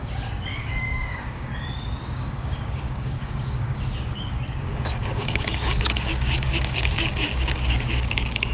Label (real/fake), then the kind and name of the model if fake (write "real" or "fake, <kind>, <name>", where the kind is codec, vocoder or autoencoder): fake, codec, DAC